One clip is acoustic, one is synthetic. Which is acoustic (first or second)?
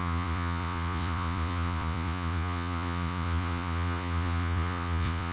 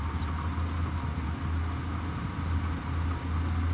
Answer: second